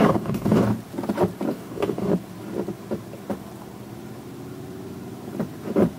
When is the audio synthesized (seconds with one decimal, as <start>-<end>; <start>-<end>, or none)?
0.0-0.7; 1.5-2.1